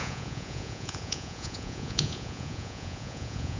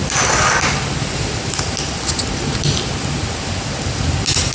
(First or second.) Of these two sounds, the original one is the second